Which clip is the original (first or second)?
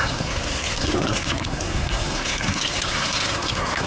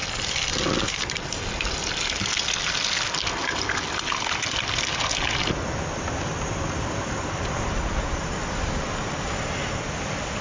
second